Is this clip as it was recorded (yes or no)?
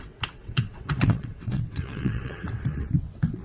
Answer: no